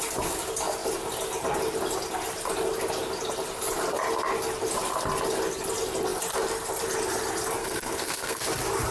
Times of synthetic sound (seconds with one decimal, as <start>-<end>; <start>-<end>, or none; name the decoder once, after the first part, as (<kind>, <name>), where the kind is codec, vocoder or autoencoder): 7.6-8.4 (codec, SNAC)